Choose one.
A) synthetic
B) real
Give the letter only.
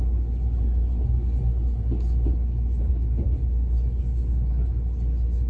B